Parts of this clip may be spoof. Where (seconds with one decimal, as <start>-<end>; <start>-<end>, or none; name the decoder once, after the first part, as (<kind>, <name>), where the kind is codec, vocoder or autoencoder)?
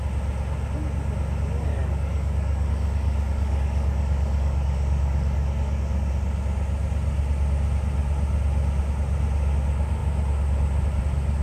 1.7-6.1 (codec, DAC)